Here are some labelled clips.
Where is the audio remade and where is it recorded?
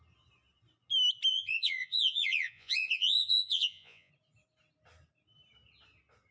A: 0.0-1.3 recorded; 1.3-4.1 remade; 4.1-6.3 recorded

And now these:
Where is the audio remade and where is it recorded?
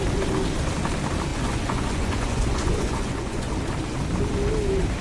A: 0.0-1.3 recorded; 1.3-3.5 remade; 3.5-5.0 recorded